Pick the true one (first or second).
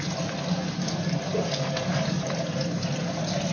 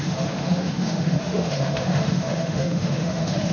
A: first